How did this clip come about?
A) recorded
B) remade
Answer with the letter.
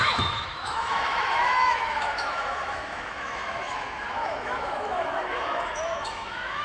B